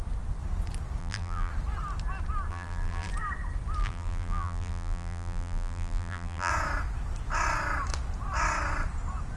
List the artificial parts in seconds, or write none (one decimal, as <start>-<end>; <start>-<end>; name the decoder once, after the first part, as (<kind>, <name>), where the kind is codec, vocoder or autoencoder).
1.0-1.5 (vocoder, BigVGAN v2); 2.5-3.1; 3.8-6.5